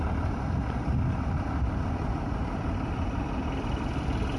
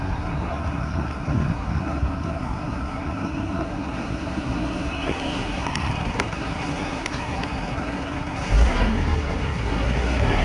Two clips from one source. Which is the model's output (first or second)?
second